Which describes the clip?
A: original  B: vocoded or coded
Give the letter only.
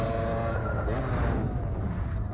A